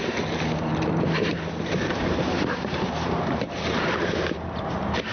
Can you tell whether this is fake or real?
fake